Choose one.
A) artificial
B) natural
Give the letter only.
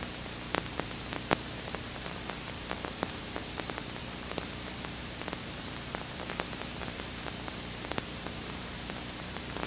A